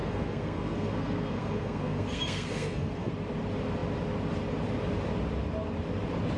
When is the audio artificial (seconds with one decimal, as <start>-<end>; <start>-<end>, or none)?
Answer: 0.0-3.1